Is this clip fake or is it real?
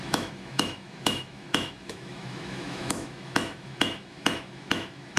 fake